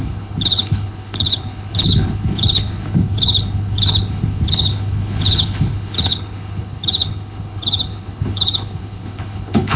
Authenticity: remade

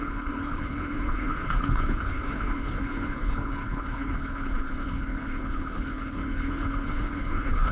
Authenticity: remade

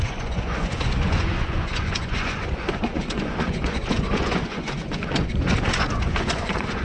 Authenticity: remade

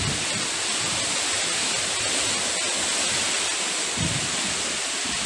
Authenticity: recorded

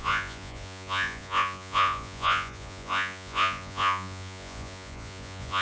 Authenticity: remade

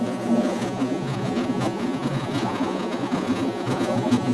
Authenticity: remade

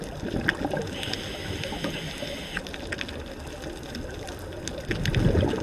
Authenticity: recorded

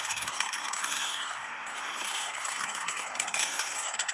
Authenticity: remade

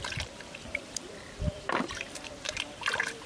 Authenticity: remade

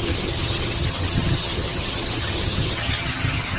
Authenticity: remade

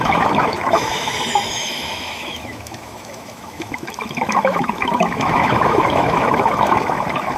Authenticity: remade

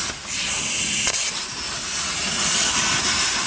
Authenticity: recorded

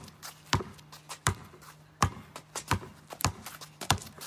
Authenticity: recorded